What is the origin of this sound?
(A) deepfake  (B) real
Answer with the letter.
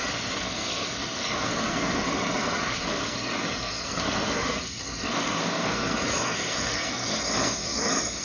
A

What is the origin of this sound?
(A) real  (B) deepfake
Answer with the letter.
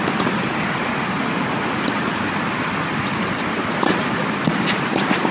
A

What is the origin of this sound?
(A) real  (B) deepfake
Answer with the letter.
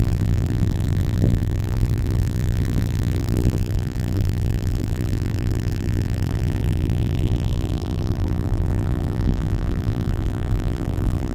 B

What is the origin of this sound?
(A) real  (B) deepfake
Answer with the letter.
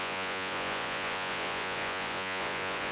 B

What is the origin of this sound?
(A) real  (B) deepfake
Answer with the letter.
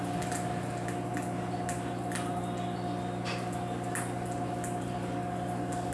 A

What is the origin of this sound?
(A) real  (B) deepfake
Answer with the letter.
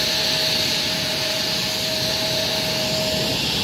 A